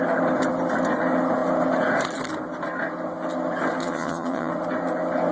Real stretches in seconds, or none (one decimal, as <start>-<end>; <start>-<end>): 0.0-3.8; 4.5-5.3